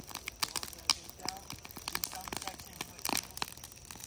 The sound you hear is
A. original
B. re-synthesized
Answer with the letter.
A